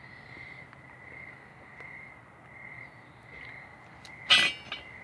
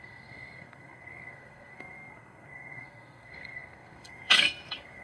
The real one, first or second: first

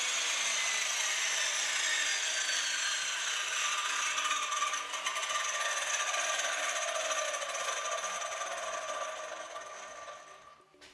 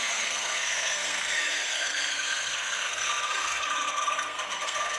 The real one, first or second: first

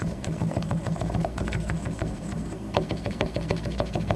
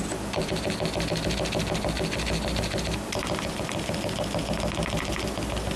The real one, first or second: second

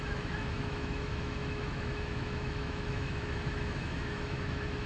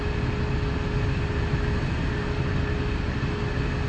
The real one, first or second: second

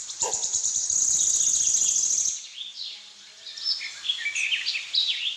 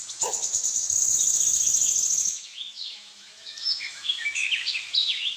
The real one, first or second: first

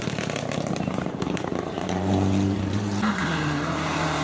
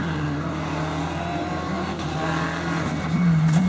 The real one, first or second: second